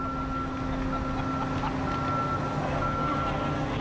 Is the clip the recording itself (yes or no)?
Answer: yes